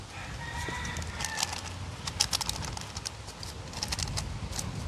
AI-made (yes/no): no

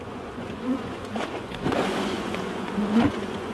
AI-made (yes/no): yes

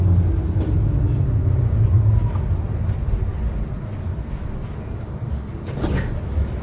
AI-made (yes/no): no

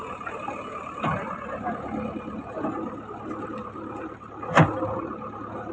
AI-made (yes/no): no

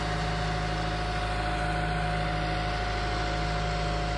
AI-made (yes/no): no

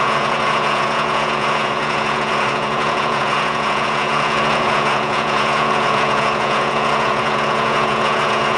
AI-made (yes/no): yes